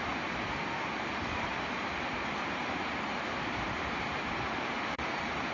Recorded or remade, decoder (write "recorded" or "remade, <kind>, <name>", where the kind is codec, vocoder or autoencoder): remade, vocoder, BigVGAN v2